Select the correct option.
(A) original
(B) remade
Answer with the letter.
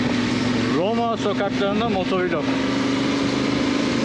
B